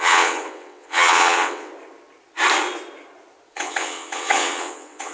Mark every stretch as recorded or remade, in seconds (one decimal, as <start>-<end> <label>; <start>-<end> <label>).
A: 0.0-1.7 remade; 1.7-3.5 recorded; 3.5-5.1 remade